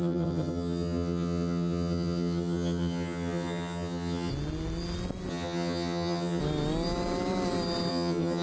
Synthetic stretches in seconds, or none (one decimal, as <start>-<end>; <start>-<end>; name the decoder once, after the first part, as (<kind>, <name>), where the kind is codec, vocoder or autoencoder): 0.0-4.3 (vocoder, HiFi-GAN); 5.3-6.4; 7.9-8.4